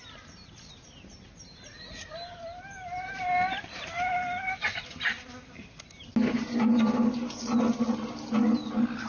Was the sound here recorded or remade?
recorded